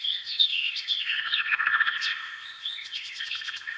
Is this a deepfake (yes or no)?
yes